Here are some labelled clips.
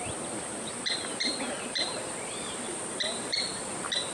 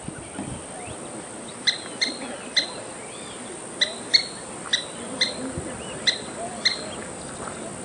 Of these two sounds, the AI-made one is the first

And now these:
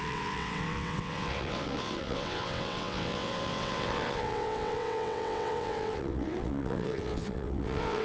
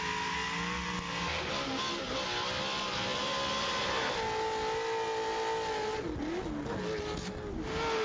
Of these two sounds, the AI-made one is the first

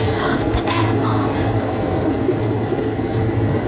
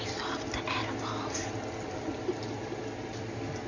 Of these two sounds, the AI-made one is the first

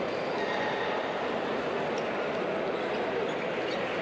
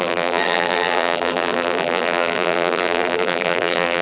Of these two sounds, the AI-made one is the second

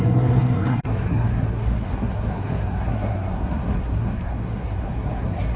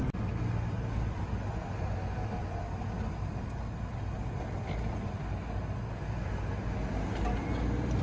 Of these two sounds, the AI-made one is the first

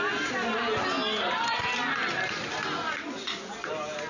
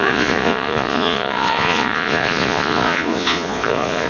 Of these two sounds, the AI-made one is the second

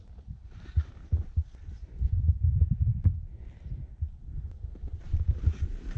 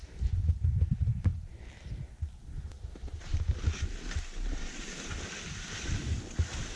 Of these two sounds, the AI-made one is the first